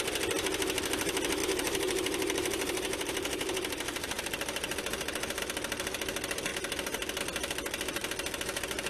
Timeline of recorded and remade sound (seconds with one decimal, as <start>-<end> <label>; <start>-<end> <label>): 0.0-1.4 recorded; 1.4-5.4 remade; 5.4-8.9 recorded